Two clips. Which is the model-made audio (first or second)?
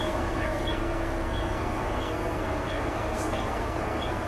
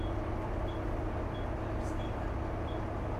first